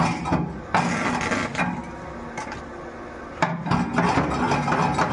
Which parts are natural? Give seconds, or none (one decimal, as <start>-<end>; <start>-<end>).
0.0-5.1